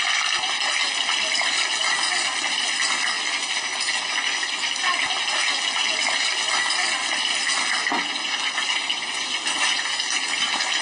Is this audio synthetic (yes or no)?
no